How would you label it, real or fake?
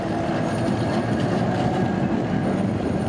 real